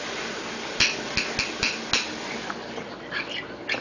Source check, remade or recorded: recorded